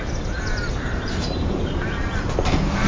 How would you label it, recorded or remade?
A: recorded